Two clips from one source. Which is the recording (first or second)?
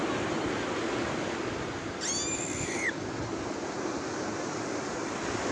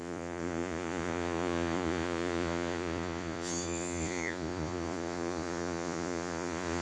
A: first